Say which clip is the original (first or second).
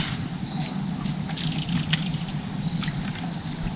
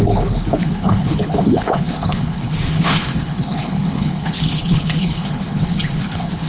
first